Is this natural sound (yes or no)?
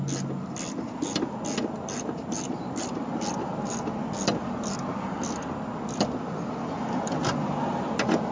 yes